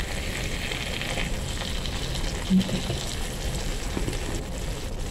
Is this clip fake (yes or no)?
no